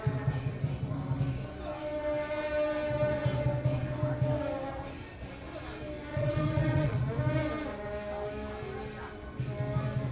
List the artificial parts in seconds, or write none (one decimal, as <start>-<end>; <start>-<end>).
6.1-7.0